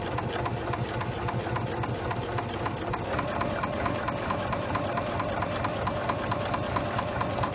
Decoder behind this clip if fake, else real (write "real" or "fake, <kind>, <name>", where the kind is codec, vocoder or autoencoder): real